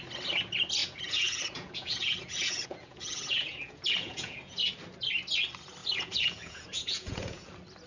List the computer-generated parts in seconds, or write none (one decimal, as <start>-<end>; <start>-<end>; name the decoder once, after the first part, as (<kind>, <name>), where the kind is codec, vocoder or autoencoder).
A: 0.8-4.7 (vocoder, Vocos); 5.8-7.5